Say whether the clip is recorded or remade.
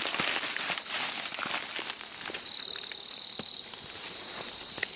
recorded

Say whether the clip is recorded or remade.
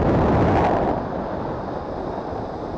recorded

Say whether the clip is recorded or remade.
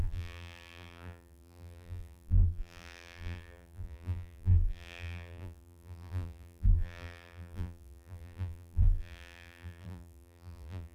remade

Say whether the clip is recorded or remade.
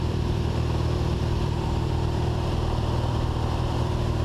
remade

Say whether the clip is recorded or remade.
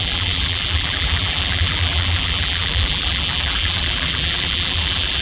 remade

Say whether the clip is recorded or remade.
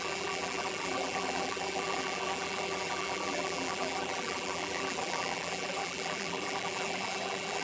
remade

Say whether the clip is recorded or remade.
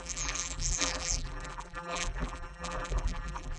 remade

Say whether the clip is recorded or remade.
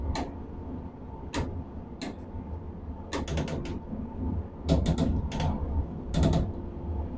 recorded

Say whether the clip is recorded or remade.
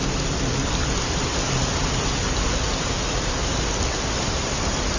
remade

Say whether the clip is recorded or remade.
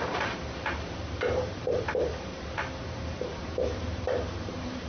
remade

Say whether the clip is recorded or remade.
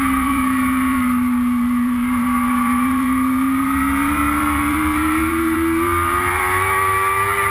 remade